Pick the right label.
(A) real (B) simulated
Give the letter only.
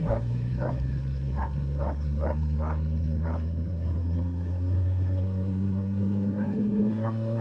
B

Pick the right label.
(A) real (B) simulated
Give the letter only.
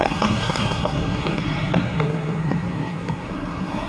B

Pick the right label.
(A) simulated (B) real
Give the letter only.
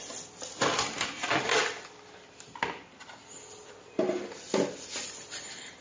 B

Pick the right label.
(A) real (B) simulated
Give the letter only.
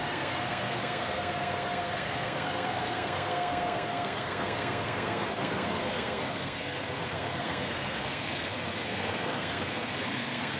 B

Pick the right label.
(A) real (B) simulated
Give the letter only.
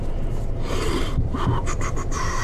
A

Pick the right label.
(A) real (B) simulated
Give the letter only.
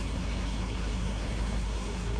B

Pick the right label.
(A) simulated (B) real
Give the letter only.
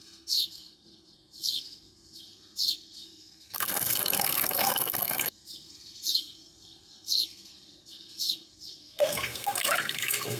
A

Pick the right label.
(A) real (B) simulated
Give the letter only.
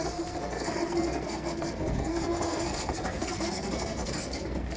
B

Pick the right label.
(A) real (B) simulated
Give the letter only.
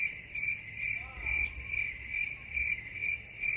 A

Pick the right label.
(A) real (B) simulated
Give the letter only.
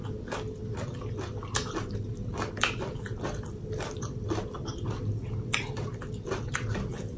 A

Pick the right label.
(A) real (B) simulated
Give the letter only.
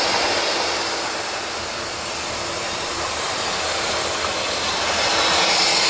A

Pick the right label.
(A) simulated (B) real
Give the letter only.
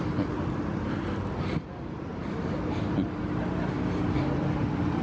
B